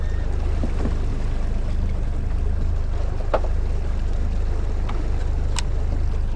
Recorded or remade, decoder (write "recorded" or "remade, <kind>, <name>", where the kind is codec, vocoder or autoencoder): recorded